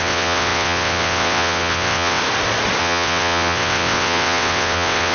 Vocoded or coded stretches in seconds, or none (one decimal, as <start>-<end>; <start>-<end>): 0.0-2.2; 2.8-5.1